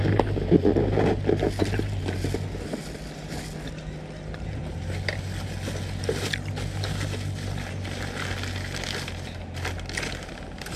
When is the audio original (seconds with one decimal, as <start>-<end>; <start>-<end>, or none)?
0.0-10.8